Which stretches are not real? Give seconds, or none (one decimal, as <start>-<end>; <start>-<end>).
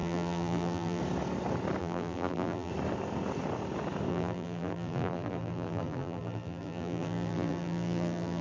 0.0-1.0; 1.8-2.7; 4.1-8.4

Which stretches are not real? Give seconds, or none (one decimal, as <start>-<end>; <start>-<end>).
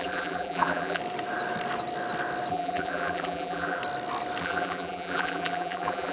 0.0-1.0; 2.5-3.8; 4.4-6.1